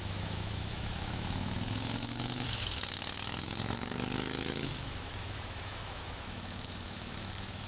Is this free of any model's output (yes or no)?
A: no